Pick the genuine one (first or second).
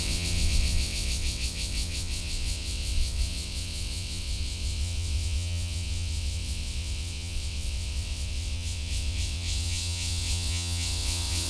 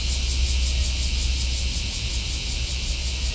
second